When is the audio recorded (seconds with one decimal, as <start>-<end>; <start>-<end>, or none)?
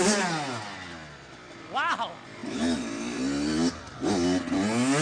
0.0-5.0